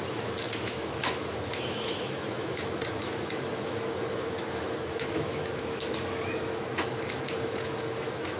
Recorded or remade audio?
remade